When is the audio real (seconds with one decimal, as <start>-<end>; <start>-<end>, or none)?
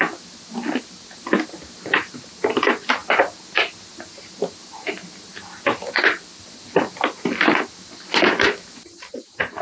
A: 0.0-5.3; 7.4-9.6